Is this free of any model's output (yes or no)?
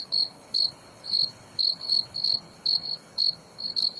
no